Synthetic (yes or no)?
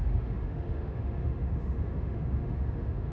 yes